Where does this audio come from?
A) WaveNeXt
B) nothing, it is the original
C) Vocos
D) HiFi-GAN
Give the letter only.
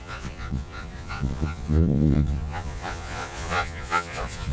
C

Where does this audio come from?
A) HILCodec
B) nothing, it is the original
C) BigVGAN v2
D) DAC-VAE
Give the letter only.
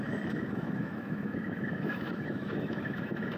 D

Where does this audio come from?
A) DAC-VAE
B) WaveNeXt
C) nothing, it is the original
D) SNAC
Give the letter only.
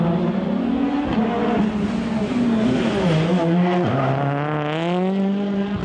C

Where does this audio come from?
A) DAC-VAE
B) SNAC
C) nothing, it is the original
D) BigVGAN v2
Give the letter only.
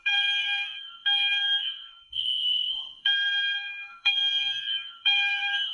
B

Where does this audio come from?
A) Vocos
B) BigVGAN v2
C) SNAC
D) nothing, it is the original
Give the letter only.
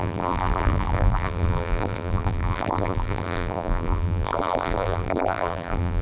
B